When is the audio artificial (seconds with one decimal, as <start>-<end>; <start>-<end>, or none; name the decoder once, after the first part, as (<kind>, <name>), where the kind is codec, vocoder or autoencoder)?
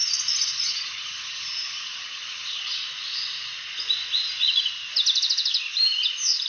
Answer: 0.6-2.8 (vocoder, HiFi-GAN)